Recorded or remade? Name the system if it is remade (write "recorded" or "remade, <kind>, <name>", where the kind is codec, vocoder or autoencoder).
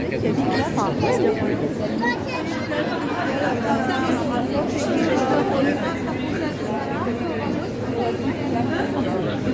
recorded